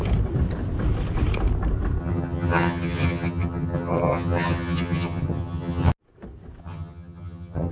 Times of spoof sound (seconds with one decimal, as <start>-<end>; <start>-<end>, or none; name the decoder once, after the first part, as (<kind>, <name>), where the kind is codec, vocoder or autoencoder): 2.0-5.9 (vocoder, HiFi-GAN); 6.6-7.7